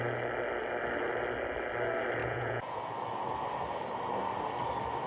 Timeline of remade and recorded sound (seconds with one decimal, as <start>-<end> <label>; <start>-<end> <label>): 0.0-2.2 recorded; 2.2-2.8 remade; 2.8-5.1 recorded

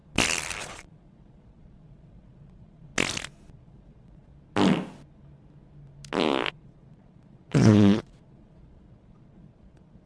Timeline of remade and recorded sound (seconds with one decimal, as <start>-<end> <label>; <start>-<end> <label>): 0.0-0.6 recorded; 0.6-2.9 remade; 2.9-3.5 recorded; 3.5-4.3 remade; 4.3-6.5 recorded; 6.5-10.1 remade

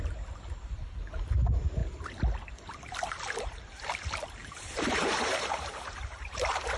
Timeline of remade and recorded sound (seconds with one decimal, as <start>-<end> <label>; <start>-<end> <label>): 0.0-4.4 recorded; 4.4-6.8 remade

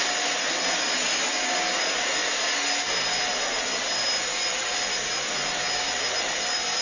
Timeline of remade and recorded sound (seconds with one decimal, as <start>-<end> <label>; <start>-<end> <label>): 0.0-6.8 recorded

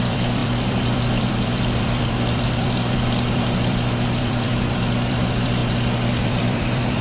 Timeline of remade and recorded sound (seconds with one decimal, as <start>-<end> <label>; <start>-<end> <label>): 0.0-7.0 remade

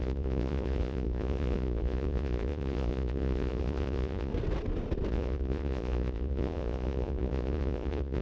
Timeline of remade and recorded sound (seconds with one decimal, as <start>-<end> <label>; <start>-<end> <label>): 0.0-4.3 remade; 4.3-5.1 recorded; 5.1-8.2 remade